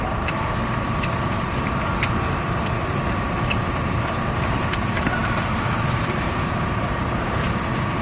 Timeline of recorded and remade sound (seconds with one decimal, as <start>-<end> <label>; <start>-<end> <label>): 0.0-8.0 remade

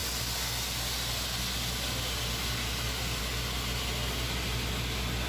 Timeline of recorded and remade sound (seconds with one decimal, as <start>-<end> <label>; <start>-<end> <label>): 0.0-5.3 recorded

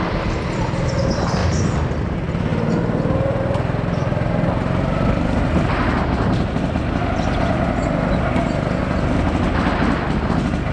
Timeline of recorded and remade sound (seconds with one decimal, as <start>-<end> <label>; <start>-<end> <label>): 0.0-1.4 recorded; 1.4-2.0 remade; 2.0-10.7 recorded

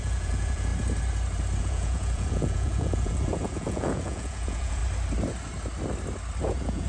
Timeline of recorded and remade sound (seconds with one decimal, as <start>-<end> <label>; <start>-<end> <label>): 0.0-0.7 remade; 0.7-1.6 recorded; 1.6-4.8 remade; 4.8-6.4 recorded; 6.4-6.9 remade

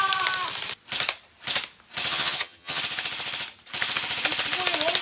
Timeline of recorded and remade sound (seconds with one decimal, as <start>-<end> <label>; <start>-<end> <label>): 0.0-2.1 recorded; 2.1-2.8 remade; 2.8-5.0 recorded